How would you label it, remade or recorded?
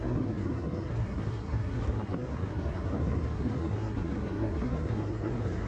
remade